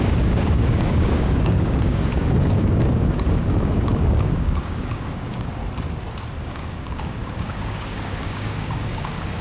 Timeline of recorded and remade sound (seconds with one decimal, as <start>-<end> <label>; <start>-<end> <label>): 0.0-5.6 remade; 5.6-6.4 recorded; 6.4-9.4 remade